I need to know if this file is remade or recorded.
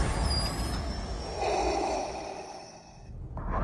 recorded